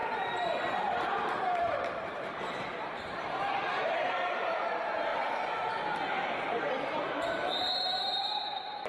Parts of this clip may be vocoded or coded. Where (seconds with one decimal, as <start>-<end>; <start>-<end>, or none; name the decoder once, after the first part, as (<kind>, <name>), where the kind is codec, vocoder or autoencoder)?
0.0-5.1 (vocoder, BigVGAN v2); 6.5-8.9

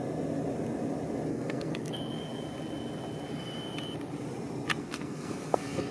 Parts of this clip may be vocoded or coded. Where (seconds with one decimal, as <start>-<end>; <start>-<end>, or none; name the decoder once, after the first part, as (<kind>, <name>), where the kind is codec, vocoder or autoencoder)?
1.3-1.9 (codec, SNAC); 4.8-5.9

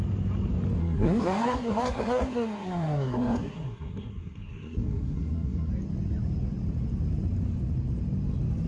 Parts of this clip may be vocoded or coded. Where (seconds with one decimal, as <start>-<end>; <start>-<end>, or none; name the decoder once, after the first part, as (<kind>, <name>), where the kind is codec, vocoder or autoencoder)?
0.8-5.7 (codec, SNAC)

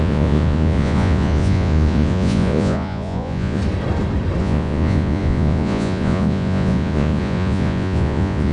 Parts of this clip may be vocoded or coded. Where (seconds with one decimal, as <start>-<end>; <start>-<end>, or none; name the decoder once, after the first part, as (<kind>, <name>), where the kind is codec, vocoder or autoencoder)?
0.0-3.6 (vocoder, Vocos); 4.4-8.5